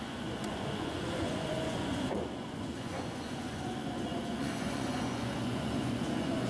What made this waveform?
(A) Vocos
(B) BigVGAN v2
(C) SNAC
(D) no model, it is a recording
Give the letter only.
A